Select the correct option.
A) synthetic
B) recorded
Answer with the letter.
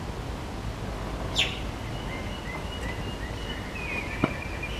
B